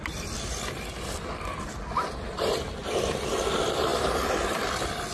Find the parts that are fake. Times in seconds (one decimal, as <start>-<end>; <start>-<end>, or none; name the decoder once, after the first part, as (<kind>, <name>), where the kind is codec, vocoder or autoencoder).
none